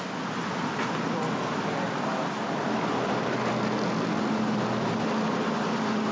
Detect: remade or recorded recorded